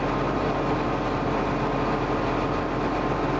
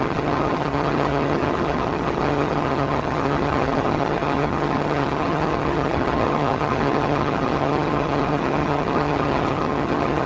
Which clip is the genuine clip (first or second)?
first